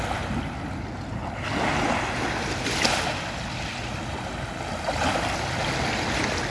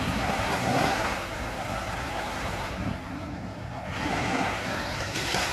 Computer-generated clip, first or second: second